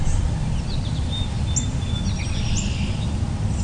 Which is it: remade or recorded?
recorded